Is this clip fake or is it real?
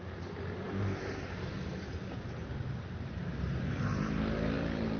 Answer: fake